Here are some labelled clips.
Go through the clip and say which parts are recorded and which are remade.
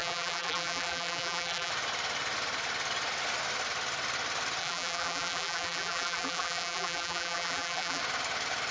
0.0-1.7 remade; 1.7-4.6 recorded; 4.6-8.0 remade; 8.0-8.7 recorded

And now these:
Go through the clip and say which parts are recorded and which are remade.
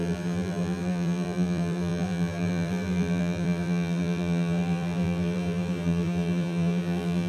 0.0-7.3 remade